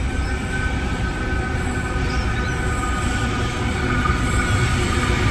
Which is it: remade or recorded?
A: recorded